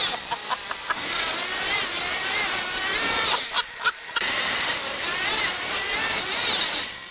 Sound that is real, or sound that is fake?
fake